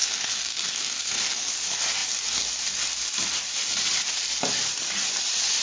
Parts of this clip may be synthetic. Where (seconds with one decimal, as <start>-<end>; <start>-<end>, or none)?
0.0-1.5